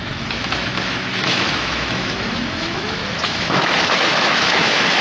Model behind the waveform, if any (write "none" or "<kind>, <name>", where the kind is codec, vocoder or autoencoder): autoencoder, DAC-VAE